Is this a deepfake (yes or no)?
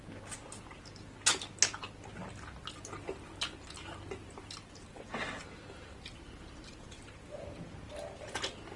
no